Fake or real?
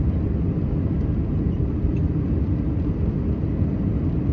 real